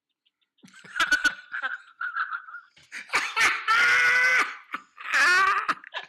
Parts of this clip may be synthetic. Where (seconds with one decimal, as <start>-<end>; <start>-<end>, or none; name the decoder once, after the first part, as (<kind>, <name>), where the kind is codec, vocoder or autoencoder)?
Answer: none